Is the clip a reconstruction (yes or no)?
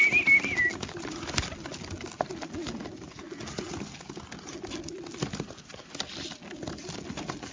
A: no